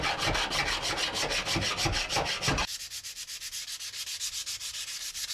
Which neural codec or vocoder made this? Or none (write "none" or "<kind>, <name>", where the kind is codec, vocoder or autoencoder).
none